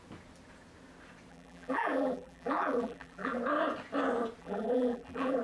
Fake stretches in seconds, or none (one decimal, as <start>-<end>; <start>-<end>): 1.3-3.4; 4.4-5.4